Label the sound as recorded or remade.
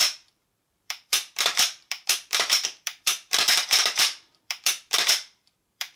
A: remade